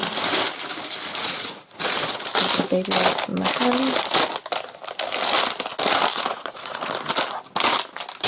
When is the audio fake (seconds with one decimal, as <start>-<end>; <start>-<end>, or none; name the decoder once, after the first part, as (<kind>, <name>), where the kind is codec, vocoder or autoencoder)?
1.1-2.3 (vocoder, Vocos); 6.1-6.9